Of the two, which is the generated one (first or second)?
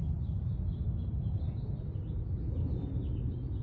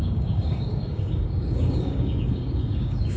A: second